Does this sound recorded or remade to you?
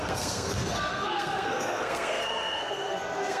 remade